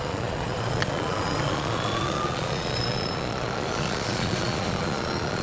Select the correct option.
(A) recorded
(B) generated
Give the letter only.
B